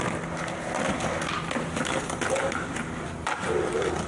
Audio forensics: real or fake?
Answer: real